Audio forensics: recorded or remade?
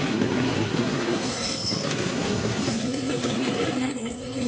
remade